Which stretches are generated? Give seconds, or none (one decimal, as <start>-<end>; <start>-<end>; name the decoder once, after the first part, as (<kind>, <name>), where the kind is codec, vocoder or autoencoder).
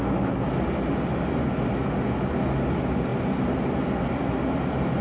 none